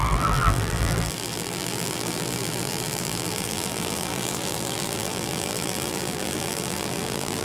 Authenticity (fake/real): fake